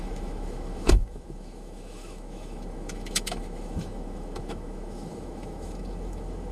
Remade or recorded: remade